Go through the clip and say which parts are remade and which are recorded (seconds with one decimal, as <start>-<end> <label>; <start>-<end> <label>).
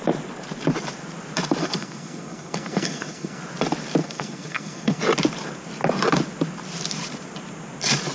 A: 0.0-1.6 recorded; 1.6-3.4 remade; 3.4-4.0 recorded; 4.0-5.0 remade; 5.0-8.1 recorded